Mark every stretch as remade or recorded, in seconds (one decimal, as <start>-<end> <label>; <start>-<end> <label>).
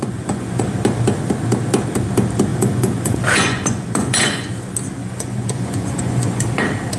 0.0-0.6 remade; 0.6-2.5 recorded; 2.5-4.5 remade; 4.5-5.0 recorded; 5.0-6.4 remade; 6.4-7.0 recorded